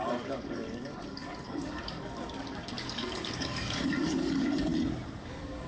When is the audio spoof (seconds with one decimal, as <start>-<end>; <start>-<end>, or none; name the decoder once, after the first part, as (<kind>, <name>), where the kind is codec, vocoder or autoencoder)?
0.0-4.7 (codec, DAC); 5.2-5.7